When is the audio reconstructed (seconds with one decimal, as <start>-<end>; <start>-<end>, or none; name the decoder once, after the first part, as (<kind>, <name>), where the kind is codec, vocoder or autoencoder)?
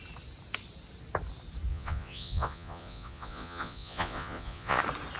1.7-4.8 (vocoder, Vocos)